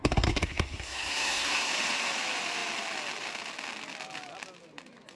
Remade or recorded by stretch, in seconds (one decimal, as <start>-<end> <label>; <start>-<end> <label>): 0.0-1.7 remade; 1.7-5.2 recorded